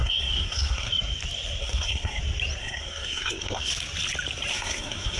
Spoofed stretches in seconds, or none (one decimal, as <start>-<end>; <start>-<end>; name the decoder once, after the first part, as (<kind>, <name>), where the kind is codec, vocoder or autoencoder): 0.0-0.9 (codec, SNAC); 1.6-2.2; 2.6-3.7; 4.5-5.2